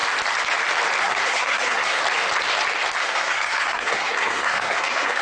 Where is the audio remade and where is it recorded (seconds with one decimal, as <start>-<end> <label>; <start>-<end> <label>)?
0.0-1.0 recorded; 1.0-2.0 remade; 2.0-3.0 recorded; 3.0-5.2 remade